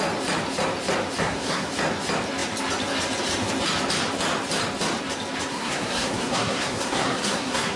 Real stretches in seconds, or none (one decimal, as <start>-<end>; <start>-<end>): 0.0-1.2; 1.7-5.5